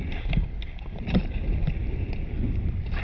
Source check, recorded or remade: remade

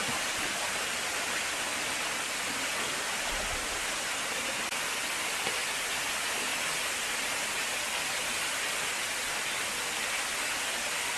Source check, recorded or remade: recorded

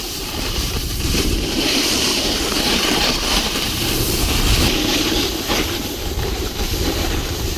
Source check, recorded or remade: remade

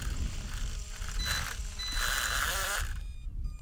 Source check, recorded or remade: recorded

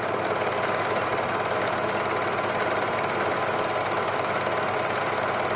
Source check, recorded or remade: recorded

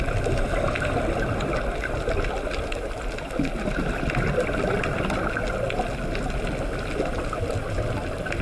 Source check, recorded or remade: recorded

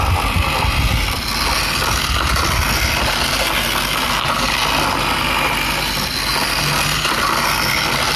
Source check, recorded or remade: recorded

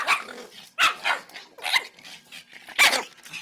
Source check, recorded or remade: recorded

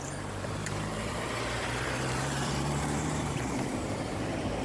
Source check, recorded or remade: remade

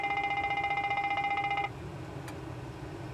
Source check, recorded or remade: recorded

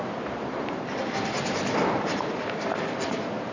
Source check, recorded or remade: remade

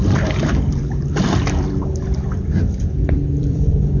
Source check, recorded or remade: remade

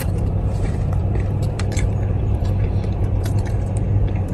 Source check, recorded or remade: remade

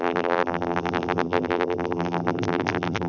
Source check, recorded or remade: remade